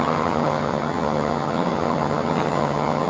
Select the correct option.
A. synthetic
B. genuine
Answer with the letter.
A